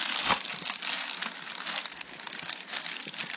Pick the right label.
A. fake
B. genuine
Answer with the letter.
B